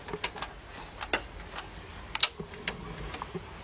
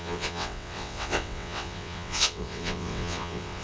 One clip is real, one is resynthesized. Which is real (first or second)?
first